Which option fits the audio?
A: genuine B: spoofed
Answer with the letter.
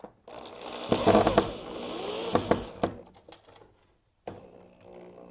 A